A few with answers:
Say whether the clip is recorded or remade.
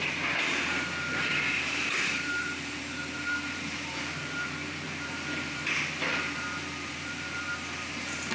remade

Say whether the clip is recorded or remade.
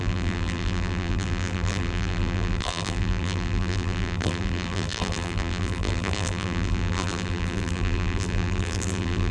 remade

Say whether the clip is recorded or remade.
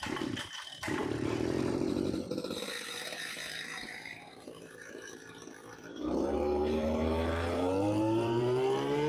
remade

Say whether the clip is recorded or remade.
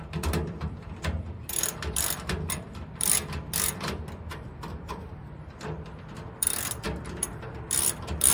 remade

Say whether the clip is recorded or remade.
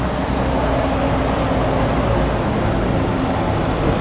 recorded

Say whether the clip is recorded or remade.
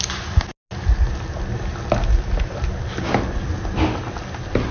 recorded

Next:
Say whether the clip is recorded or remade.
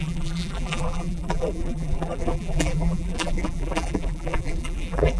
remade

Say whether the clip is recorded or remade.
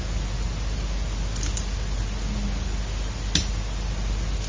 recorded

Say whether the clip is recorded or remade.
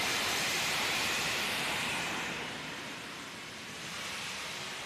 remade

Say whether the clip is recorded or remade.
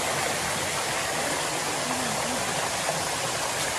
recorded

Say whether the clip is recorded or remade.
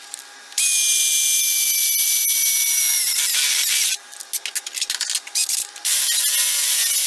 recorded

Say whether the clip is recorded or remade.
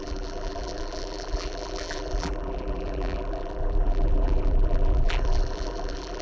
remade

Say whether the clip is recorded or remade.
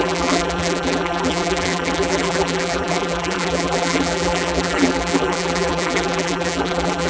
remade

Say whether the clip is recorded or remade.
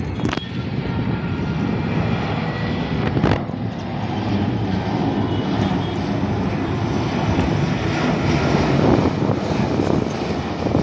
recorded